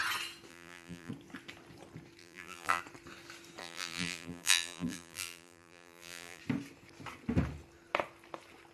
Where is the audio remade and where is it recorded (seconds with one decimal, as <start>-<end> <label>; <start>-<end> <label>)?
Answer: 0.0-0.5 recorded; 0.5-1.1 remade; 1.1-2.2 recorded; 2.2-2.8 remade; 2.8-3.6 recorded; 3.6-6.4 remade; 6.4-8.7 recorded